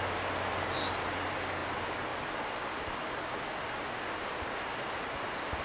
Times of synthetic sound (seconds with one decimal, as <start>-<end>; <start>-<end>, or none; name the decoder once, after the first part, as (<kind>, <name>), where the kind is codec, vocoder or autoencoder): none